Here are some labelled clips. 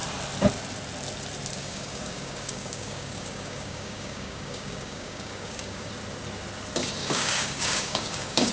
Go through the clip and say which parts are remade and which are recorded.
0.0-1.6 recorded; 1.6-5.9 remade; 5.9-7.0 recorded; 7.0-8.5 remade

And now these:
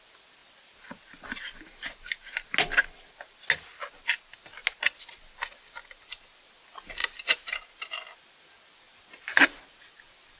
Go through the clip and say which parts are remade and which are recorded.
0.0-10.4 recorded

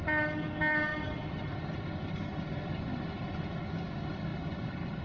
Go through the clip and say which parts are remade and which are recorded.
0.0-4.3 recorded; 4.3-5.0 remade

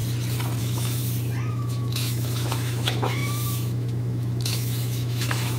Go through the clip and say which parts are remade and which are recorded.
0.0-0.6 recorded; 0.6-1.0 remade; 1.0-1.5 recorded; 1.5-5.6 remade

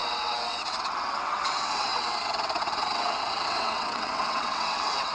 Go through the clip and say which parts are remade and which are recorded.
0.0-5.1 remade

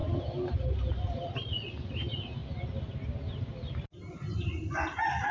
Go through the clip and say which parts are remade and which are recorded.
0.0-5.3 recorded